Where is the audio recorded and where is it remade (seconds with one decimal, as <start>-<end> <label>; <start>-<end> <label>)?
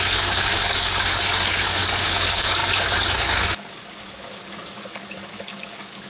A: 0.0-6.1 remade